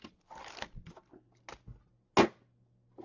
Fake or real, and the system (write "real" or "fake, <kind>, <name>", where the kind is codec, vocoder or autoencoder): real